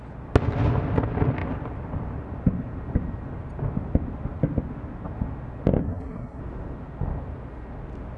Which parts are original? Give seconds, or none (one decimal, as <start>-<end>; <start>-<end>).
0.0-5.8; 6.4-8.2